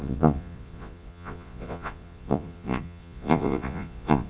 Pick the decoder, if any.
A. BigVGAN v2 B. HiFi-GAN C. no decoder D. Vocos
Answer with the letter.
D